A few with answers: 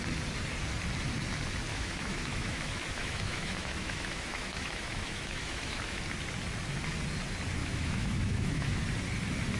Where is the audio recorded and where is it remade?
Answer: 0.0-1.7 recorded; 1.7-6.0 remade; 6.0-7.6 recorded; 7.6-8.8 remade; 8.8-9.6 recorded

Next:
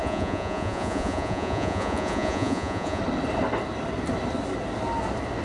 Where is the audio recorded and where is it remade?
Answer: 0.0-3.0 remade; 3.0-5.4 recorded

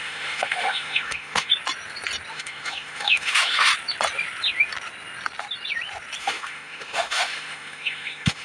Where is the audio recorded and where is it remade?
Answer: 0.0-1.5 remade; 1.5-2.3 recorded; 2.3-3.7 remade; 3.7-6.2 recorded; 6.2-8.4 remade

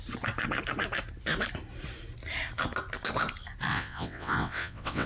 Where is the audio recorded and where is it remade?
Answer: 0.0-3.7 recorded; 3.7-5.1 remade